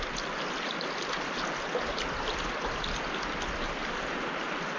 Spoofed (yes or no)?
no